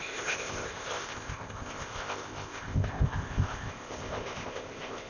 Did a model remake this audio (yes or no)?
yes